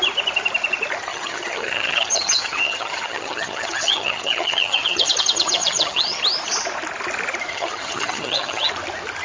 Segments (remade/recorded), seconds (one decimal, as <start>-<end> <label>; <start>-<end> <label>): 0.0-1.1 recorded; 1.1-6.2 remade; 6.2-7.5 recorded; 7.5-8.7 remade; 8.7-9.2 recorded